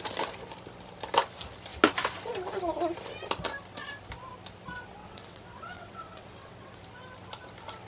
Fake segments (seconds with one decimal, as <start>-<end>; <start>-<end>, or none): 5.0-6.8